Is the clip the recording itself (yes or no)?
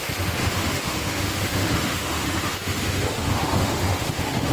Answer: no